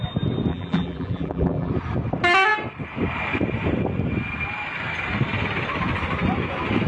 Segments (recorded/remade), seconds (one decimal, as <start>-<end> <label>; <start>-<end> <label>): 0.0-0.5 recorded; 0.5-1.7 remade; 1.7-6.9 recorded